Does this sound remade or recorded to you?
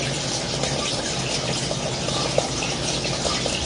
recorded